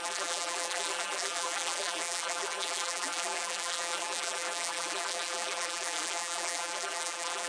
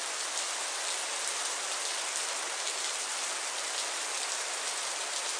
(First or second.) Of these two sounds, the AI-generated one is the first